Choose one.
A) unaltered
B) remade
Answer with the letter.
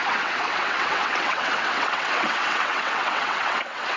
B